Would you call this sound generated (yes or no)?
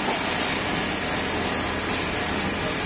no